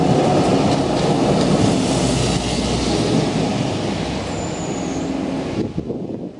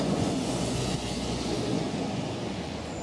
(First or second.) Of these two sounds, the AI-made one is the second